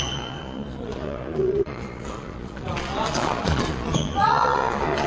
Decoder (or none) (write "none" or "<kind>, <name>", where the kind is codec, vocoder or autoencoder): vocoder, Vocos